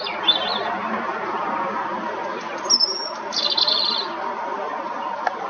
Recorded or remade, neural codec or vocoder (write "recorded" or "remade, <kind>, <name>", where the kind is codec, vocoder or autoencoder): recorded